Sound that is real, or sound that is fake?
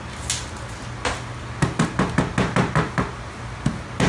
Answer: real